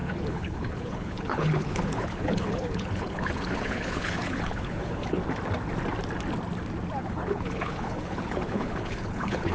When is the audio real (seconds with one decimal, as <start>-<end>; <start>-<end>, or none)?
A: 5.2-7.0

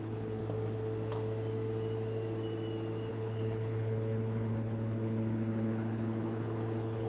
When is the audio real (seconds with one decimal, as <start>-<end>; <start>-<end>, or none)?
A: 0.4-3.1

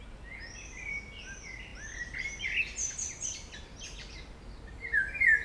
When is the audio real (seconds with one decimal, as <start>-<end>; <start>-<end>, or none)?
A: 0.0-5.4